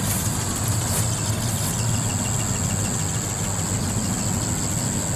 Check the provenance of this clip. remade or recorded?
recorded